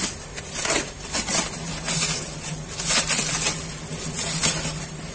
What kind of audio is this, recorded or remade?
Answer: recorded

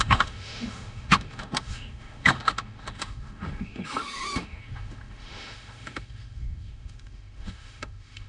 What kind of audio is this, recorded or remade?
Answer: remade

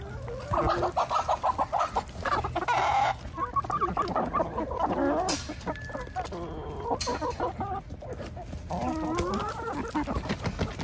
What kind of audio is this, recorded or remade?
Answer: recorded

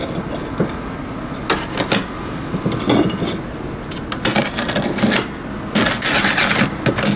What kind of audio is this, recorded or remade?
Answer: recorded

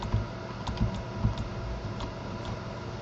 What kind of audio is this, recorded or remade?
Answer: recorded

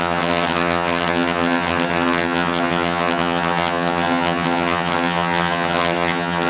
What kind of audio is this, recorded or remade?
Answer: remade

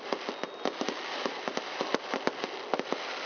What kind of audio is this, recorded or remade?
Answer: recorded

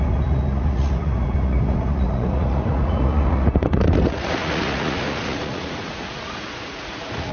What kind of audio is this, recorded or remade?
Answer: remade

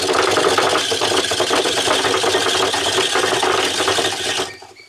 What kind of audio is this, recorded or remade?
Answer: recorded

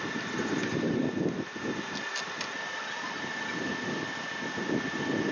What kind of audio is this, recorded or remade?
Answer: recorded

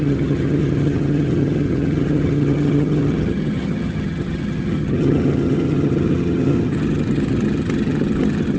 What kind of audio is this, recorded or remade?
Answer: remade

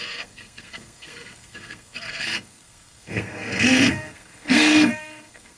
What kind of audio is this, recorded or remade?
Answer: remade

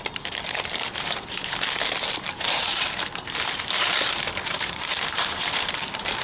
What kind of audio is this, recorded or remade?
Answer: remade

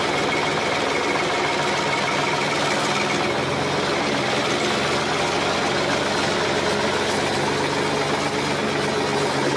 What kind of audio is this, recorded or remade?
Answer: recorded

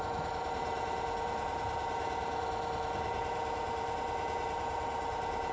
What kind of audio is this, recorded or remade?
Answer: remade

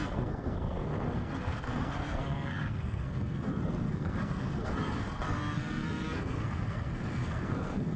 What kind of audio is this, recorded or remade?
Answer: remade